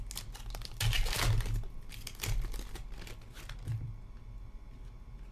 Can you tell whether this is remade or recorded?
recorded